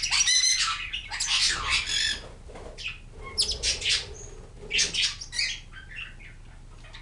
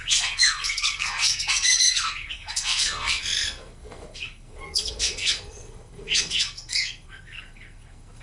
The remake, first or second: second